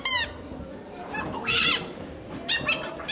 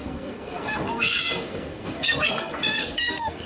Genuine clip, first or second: first